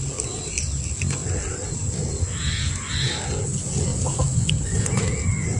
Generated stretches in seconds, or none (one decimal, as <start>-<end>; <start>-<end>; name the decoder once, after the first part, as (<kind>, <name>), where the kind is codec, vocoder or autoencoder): 4.3-5.0 (vocoder, Vocos)